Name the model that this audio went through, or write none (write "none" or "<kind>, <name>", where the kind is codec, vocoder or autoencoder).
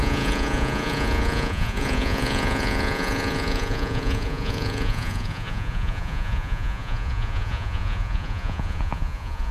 vocoder, Vocos